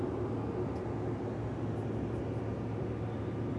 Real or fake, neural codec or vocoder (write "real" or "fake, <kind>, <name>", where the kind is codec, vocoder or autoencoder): real